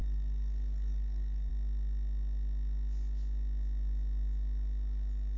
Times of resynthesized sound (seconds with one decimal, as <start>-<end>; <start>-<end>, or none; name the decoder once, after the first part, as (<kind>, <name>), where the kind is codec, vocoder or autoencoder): 0.0-1.5 (codec, DAC)